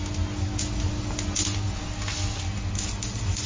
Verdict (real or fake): real